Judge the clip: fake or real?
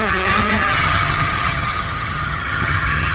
fake